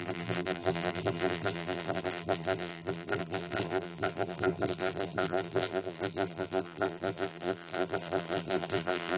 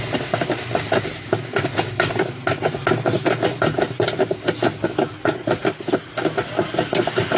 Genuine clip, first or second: second